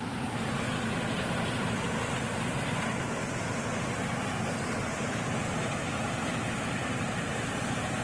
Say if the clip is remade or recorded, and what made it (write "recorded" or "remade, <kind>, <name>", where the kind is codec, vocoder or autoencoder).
recorded